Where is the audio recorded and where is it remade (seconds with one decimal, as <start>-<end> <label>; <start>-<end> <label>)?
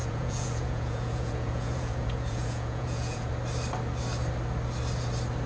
0.0-3.3 remade; 3.3-5.5 recorded